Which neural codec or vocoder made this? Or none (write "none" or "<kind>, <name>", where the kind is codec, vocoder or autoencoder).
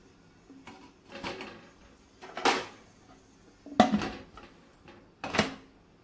none